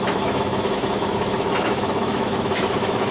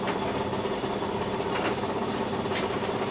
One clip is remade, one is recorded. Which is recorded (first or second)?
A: second